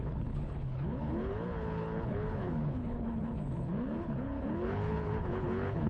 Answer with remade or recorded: remade